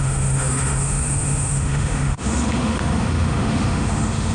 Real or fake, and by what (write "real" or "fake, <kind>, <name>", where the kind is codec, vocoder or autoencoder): fake, autoencoder, DAC-VAE